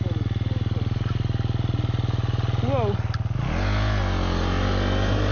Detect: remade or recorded recorded